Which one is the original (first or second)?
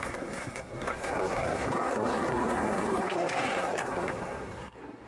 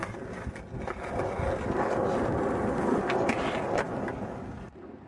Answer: second